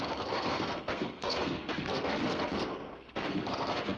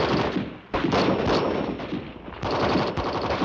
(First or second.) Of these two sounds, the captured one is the second